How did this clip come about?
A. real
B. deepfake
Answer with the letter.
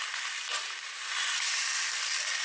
B